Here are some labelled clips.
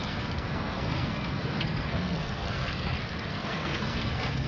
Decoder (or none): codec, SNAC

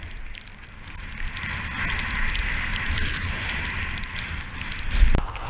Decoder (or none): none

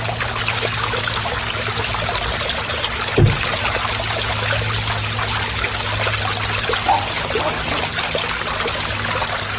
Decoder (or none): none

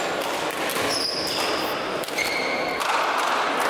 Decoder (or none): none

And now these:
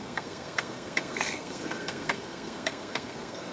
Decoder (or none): codec, SNAC